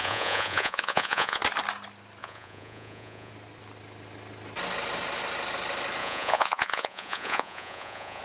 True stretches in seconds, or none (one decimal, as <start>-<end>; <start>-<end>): 1.4-2.2; 3.3-6.0